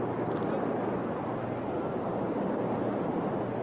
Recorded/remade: recorded